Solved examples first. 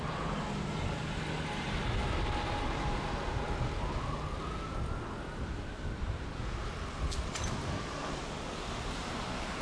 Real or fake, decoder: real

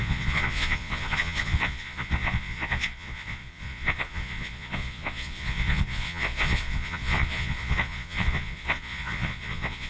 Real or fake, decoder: fake, vocoder, Vocos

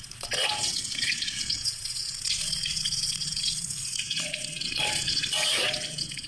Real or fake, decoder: fake, vocoder, Vocos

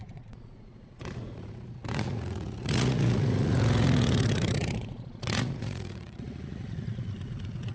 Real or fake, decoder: fake, vocoder, Vocos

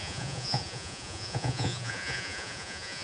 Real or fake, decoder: fake, vocoder, Vocos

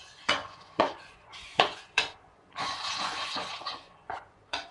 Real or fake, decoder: fake, vocoder, Vocos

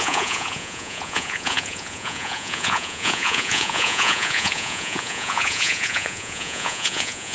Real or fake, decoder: fake, vocoder, Vocos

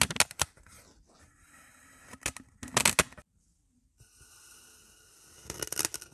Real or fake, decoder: real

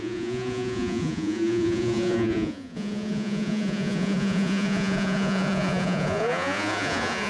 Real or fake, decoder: fake, vocoder, Vocos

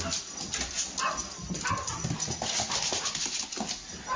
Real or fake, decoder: real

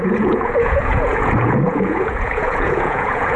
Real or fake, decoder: fake, vocoder, Vocos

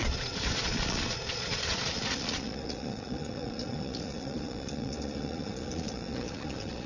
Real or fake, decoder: fake, vocoder, Vocos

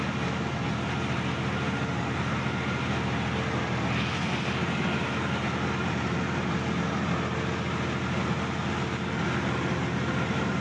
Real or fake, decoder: real